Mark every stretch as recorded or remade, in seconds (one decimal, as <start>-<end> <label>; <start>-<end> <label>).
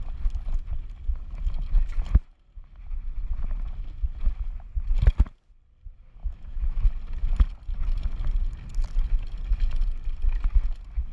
0.0-6.2 recorded; 6.2-6.8 remade; 6.8-11.1 recorded